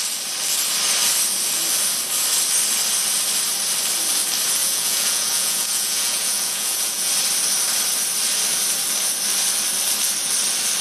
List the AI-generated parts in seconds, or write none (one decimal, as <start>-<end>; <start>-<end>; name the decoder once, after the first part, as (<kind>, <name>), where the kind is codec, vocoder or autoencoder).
4.6-7.1 (vocoder, Vocos)